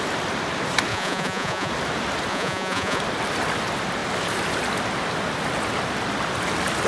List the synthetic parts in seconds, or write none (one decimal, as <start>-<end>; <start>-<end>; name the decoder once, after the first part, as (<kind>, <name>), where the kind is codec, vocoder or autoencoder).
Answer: 0.9-1.7 (vocoder, Vocos); 2.3-3.0